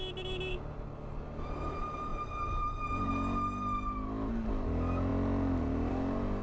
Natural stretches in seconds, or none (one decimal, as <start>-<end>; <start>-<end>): 0.0-2.1; 3.1-6.4